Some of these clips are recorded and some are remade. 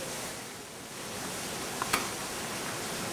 recorded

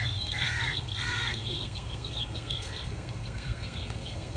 remade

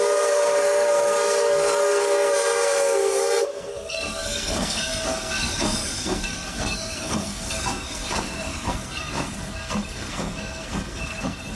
remade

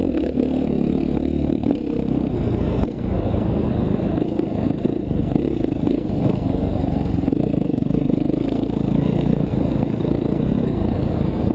remade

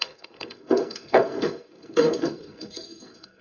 remade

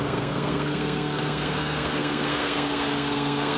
remade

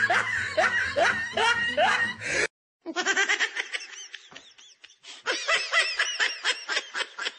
recorded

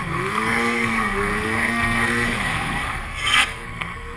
remade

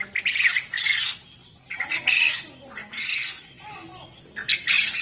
recorded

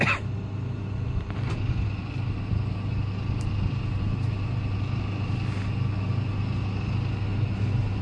recorded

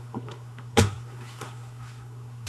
remade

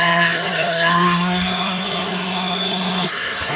remade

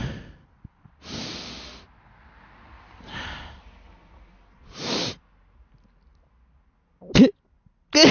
recorded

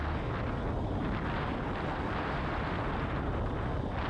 recorded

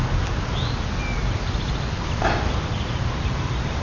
recorded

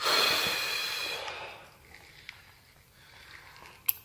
recorded